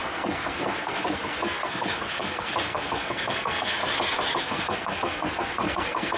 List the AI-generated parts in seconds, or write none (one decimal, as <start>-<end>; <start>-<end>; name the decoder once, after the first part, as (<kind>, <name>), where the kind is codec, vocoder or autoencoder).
0.0-3.8 (codec, SNAC); 4.4-6.2